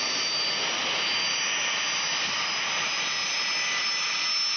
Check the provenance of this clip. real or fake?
real